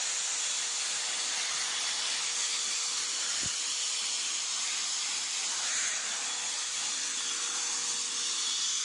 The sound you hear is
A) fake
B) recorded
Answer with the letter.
B